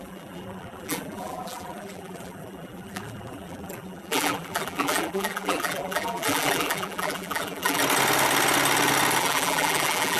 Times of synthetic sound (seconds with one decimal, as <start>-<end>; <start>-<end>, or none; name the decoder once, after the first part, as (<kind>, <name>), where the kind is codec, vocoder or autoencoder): 0.0-7.8 (vocoder, BigVGAN v2); 9.2-10.2